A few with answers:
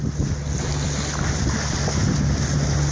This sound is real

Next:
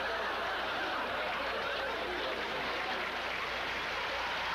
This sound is real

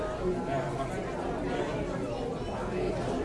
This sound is real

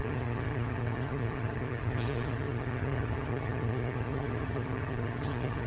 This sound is fake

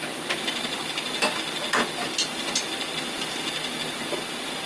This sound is real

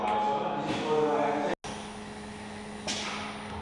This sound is real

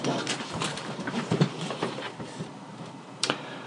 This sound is fake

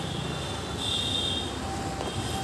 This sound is real